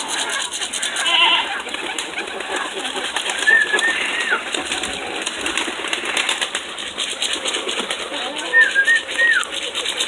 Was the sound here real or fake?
real